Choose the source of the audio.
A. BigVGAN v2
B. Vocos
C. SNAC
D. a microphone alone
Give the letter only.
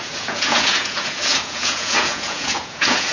B